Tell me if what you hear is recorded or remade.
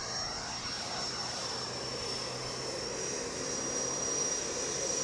recorded